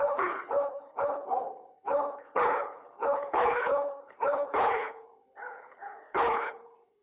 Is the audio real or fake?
fake